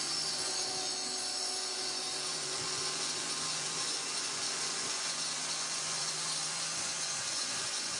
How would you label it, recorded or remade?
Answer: remade